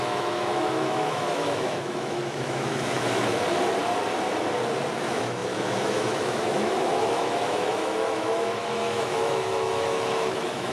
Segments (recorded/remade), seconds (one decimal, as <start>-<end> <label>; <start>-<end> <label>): 0.0-3.3 remade; 3.3-5.0 recorded; 5.0-10.7 remade